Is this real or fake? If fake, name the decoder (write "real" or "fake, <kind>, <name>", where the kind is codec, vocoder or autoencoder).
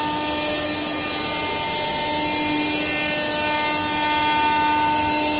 real